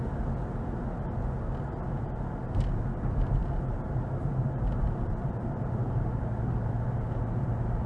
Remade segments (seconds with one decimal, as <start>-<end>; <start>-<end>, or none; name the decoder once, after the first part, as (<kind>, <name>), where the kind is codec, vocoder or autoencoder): 3.4-6.2 (vocoder, BigVGAN v2)